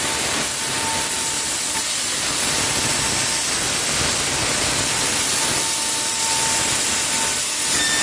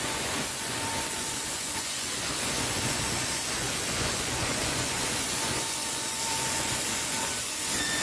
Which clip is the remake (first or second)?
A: second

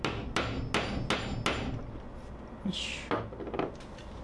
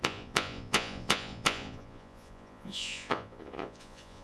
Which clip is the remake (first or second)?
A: second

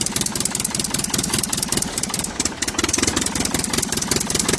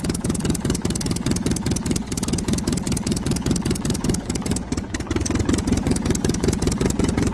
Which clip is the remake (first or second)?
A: second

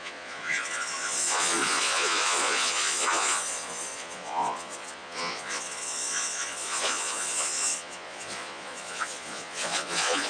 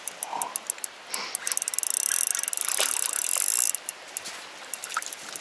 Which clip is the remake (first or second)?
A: first